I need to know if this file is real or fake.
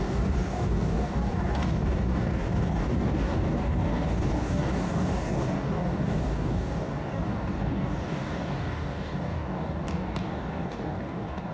fake